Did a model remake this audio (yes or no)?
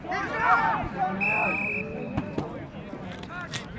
no